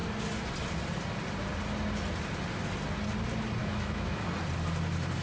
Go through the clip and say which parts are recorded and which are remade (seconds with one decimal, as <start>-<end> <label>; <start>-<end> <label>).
0.0-3.6 recorded; 3.6-4.3 remade; 4.3-5.2 recorded